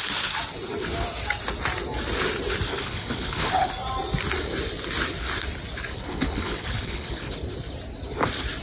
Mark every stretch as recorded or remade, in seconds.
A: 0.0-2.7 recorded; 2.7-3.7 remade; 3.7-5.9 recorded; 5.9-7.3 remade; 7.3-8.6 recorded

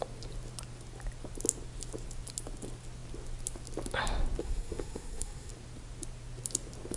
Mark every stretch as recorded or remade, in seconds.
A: 0.0-4.4 recorded; 4.4-5.5 remade; 5.5-7.0 recorded

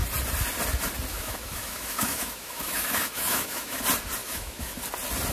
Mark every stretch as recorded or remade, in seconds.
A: 0.0-1.1 recorded; 1.1-3.8 remade; 3.8-4.2 recorded; 4.2-4.8 remade; 4.8-5.3 recorded

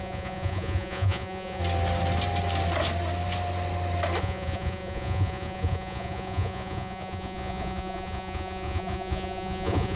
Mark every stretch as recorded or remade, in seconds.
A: 0.0-1.6 remade; 1.6-4.2 recorded; 4.2-10.0 remade

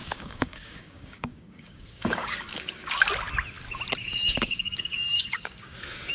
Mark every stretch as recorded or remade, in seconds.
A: 0.0-3.1 remade; 3.1-4.0 recorded; 4.0-6.1 remade

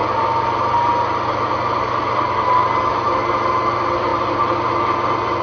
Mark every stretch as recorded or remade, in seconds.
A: 0.0-5.4 recorded

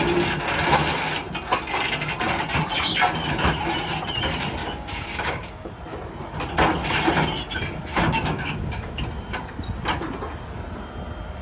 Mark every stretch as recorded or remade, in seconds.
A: 0.0-4.6 recorded; 4.6-5.7 remade; 5.7-7.9 recorded; 7.9-8.9 remade; 8.9-11.4 recorded

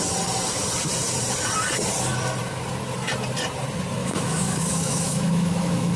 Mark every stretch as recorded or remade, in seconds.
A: 0.0-4.0 recorded; 4.0-6.0 remade